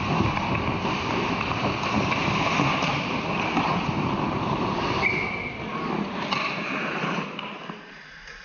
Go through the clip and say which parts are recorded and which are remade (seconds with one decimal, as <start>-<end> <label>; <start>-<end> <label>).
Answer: 0.0-8.4 recorded